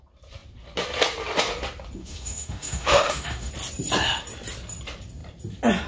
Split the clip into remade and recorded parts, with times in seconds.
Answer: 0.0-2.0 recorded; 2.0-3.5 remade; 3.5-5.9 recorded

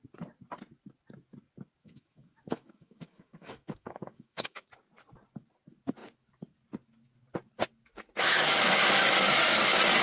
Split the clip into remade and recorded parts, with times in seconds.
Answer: 0.0-1.8 recorded; 1.8-4.7 remade; 4.7-10.0 recorded

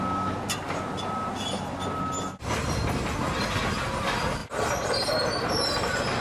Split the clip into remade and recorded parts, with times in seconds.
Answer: 0.0-6.2 recorded

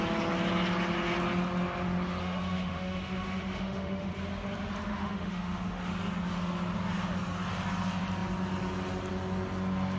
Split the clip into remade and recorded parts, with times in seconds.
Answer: 0.0-2.2 recorded; 2.2-4.1 remade; 4.1-4.9 recorded; 4.9-5.9 remade; 5.9-10.0 recorded

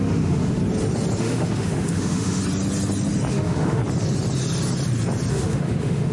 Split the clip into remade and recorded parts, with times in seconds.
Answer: 0.0-0.6 remade; 0.6-1.2 recorded; 1.2-2.4 remade; 2.4-3.3 recorded; 3.3-3.8 remade; 3.8-5.3 recorded; 5.3-6.1 remade

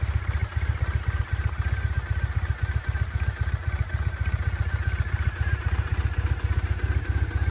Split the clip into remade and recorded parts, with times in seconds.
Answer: 0.0-7.5 recorded

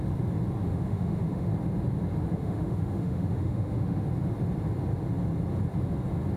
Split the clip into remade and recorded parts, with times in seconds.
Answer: 0.0-0.6 recorded; 0.6-1.5 remade; 1.5-2.2 recorded; 2.2-4.1 remade; 4.1-6.4 recorded